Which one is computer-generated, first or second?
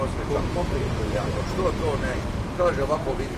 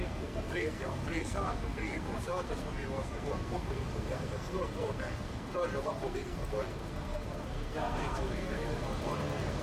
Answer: second